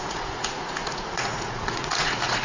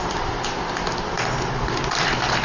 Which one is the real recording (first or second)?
second